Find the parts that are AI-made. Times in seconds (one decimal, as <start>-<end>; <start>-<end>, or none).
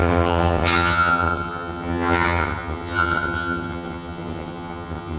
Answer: 0.0-5.2